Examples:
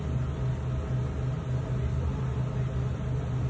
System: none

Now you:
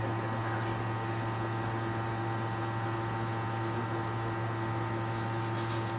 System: none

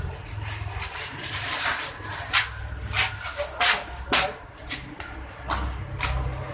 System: none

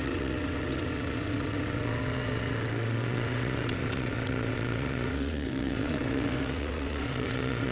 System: vocoder, WaveNeXt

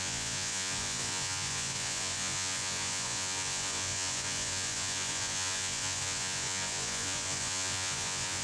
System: vocoder, Vocos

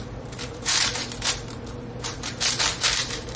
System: vocoder, BigVGAN v2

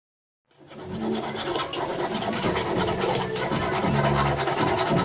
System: none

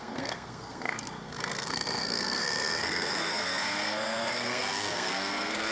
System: codec, SNAC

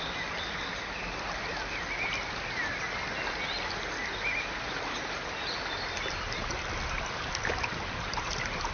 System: none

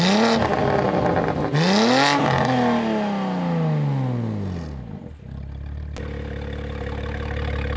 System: none